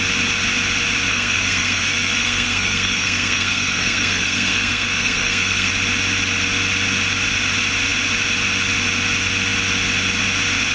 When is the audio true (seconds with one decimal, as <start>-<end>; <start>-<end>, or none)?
0.0-1.1; 5.7-10.7